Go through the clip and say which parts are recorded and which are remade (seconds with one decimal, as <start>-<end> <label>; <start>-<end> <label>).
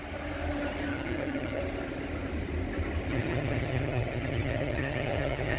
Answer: 0.0-0.9 recorded; 0.9-1.6 remade; 1.6-3.1 recorded; 3.1-5.6 remade